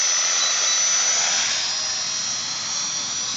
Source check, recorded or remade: recorded